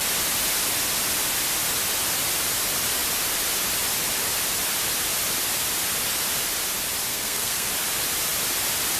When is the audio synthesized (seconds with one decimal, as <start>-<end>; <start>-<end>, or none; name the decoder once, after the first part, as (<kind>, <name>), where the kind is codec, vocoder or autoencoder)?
7.1-7.7 (codec, SNAC)